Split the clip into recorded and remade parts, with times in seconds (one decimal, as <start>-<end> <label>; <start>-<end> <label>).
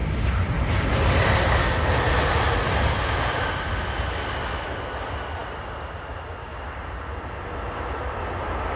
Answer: 0.0-8.8 recorded